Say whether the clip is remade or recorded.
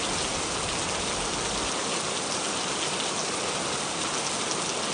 recorded